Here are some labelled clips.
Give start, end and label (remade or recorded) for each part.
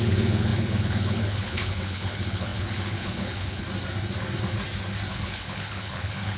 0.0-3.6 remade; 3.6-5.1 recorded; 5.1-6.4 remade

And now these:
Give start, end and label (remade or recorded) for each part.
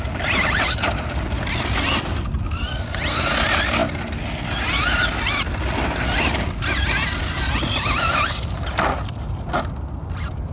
0.0-10.5 recorded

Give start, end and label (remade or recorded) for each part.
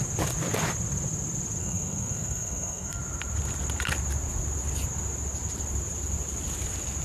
0.0-1.6 recorded; 1.6-3.0 remade; 3.0-7.0 recorded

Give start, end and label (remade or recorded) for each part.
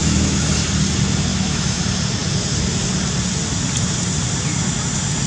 0.0-0.5 remade; 0.5-1.3 recorded; 1.3-1.8 remade; 1.8-5.3 recorded